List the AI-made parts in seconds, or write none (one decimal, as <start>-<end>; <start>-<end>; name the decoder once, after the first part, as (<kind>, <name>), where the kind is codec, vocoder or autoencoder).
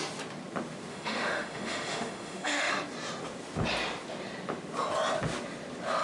0.9-2.7 (autoencoder, DAC-VAE)